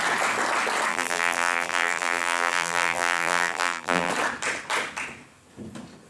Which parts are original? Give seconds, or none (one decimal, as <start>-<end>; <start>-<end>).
0.0-0.9; 4.1-6.1